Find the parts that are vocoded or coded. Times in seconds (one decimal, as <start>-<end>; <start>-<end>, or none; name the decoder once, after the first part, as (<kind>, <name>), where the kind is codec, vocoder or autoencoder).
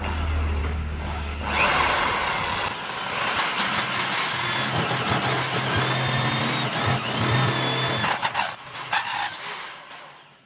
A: 0.6-1.4 (codec, DAC)